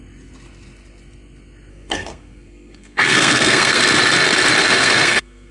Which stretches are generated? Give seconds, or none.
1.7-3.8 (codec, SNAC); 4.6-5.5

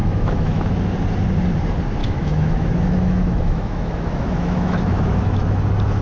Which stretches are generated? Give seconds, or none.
0.0-0.7 (autoencoder, DAC-VAE); 2.0-5.6

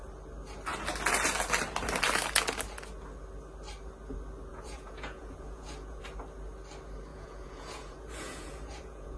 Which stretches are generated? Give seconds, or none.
4.5-6.0 (vocoder, Vocos); 7.1-9.2

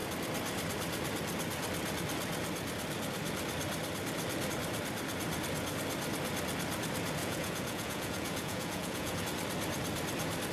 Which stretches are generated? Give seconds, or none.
7.2-9.2 (vocoder, Vocos)

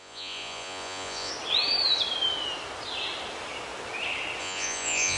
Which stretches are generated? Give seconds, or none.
0.0-1.3 (vocoder, Vocos); 4.4-5.2

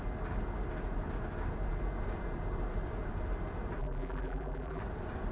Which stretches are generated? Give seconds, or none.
3.8-4.8 (vocoder, BigVGAN v2)